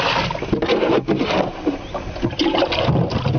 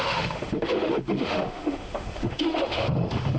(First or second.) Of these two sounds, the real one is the first